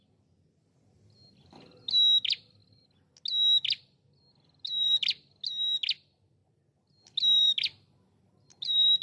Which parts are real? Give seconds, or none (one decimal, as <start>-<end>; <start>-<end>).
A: 0.0-9.0